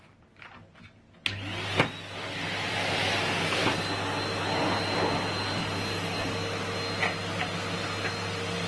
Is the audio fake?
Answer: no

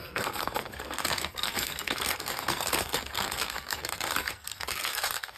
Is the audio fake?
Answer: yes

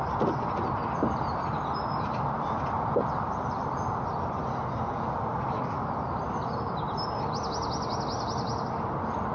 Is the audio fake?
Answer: no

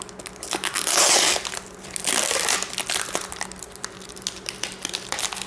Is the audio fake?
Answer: no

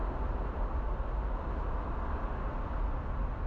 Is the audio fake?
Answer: no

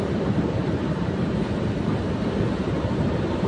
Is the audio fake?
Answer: yes